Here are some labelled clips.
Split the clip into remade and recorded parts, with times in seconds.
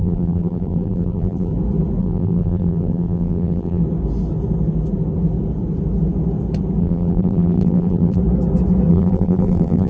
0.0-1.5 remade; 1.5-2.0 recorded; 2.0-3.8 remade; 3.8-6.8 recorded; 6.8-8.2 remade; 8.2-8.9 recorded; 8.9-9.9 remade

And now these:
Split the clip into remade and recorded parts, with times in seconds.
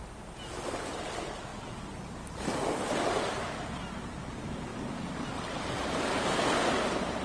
0.0-7.2 recorded